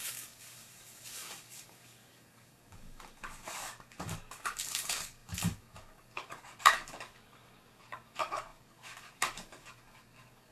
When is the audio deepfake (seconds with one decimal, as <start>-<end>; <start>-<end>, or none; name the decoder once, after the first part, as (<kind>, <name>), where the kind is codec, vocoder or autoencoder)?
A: 0.0-10.5 (codec, DAC)